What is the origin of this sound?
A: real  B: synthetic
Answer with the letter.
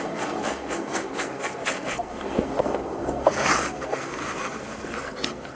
B